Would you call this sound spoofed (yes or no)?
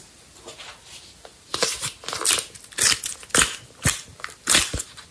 no